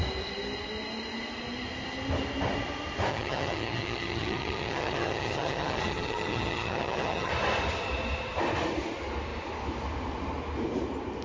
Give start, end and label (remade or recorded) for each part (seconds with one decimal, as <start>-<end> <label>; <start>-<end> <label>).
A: 0.0-3.1 recorded; 3.1-7.3 remade; 7.3-11.2 recorded